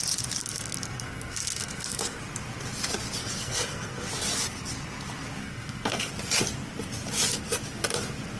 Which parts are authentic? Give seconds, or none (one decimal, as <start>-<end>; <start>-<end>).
0.0-0.4; 2.2-3.2; 4.1-5.4; 6.1-8.4